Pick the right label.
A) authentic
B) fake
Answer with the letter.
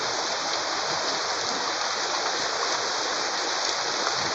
A